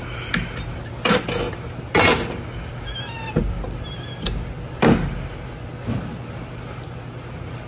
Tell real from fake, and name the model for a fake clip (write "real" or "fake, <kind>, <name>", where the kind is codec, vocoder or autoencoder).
real